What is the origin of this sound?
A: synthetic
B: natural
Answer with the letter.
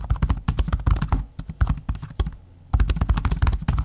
B